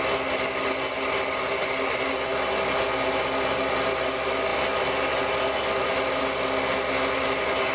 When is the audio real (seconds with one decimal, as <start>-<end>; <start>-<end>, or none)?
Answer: 0.0-7.7